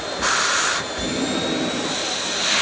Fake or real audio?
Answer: real